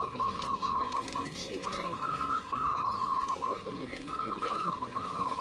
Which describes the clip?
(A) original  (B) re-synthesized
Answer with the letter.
B